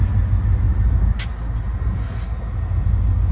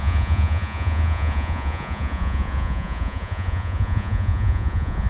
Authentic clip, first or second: first